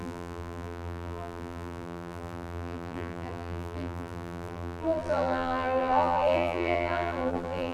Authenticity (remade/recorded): remade